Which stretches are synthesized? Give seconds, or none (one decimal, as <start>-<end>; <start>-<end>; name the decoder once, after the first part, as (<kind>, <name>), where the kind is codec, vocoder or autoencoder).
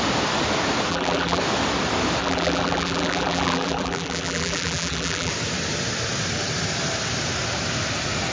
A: 0.9-1.4 (vocoder, BigVGAN v2); 2.2-5.3